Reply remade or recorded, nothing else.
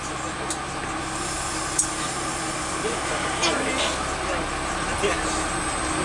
recorded